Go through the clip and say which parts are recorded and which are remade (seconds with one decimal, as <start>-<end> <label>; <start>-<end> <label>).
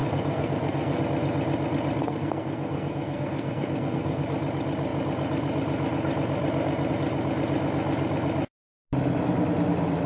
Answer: 0.0-1.0 remade; 1.0-2.0 recorded; 2.0-4.2 remade; 4.2-10.1 recorded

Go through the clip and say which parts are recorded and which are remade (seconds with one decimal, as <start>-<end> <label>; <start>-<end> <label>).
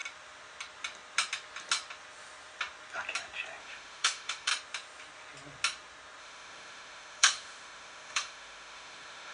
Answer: 0.0-3.6 recorded; 3.6-4.5 remade; 4.5-6.2 recorded; 6.2-9.3 remade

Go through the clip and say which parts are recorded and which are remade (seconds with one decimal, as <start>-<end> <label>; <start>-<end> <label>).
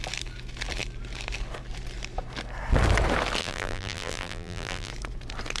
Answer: 0.0-3.4 recorded; 3.4-4.9 remade; 4.9-5.6 recorded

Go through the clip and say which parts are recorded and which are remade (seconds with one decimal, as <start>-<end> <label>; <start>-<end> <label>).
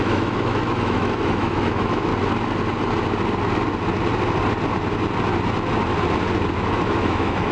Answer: 0.0-2.1 remade; 2.1-6.6 recorded; 6.6-7.5 remade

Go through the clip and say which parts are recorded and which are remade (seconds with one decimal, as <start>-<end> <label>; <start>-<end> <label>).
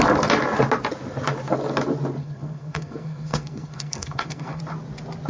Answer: 0.0-2.2 recorded; 2.2-4.6 remade; 4.6-5.3 recorded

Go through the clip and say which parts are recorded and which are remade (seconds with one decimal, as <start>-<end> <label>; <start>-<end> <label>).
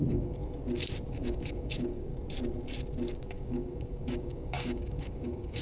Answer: 0.0-0.4 remade; 0.4-1.1 recorded; 1.1-2.1 remade; 2.1-3.1 recorded; 3.1-5.6 remade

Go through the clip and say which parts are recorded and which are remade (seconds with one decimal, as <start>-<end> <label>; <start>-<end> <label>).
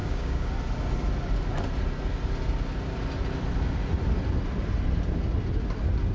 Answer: 0.0-0.5 remade; 0.5-6.1 recorded